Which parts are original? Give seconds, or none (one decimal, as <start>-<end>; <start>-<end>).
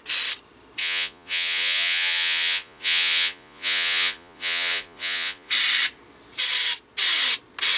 0.0-0.8; 5.5-7.8